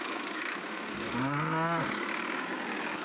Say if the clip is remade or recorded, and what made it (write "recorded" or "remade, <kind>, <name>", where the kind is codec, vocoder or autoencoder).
remade, codec, DAC